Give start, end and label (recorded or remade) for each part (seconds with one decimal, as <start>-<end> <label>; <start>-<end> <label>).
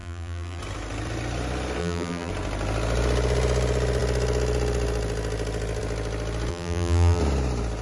0.0-0.6 remade; 0.6-1.8 recorded; 1.8-2.3 remade; 2.3-6.5 recorded; 6.5-7.2 remade; 7.2-7.8 recorded